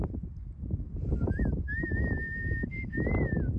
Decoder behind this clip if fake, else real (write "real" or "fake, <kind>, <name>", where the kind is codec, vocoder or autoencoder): real